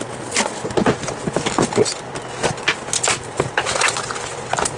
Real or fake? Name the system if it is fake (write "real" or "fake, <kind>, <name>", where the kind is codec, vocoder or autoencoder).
real